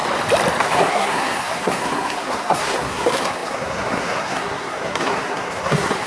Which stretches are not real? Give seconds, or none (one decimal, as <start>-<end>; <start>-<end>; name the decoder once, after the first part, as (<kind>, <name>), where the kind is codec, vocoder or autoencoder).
0.6-6.1 (codec, SNAC)